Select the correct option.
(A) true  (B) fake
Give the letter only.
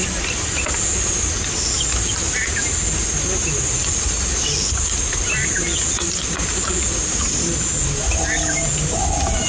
A